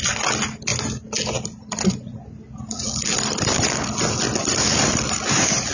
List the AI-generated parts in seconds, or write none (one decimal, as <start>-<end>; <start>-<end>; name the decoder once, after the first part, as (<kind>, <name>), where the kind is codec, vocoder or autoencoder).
none